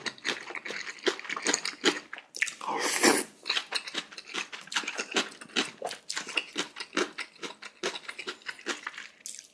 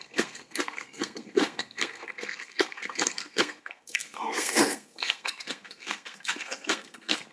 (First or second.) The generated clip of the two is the second